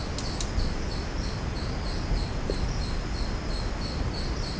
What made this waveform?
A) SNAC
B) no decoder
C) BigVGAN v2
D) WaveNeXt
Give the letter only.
B